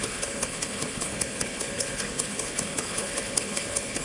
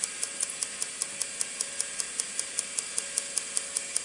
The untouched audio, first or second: second